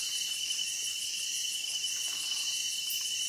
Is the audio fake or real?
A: real